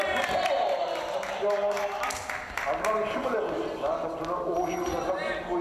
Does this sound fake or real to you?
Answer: real